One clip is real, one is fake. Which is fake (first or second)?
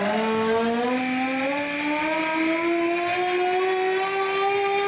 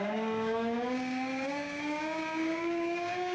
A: second